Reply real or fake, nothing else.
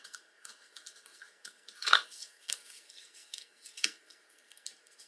fake